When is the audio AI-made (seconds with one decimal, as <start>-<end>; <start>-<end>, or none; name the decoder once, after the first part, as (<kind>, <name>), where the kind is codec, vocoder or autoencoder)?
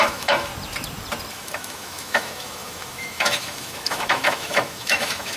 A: 0.0-0.5 (autoencoder, DAC-VAE); 1.3-5.4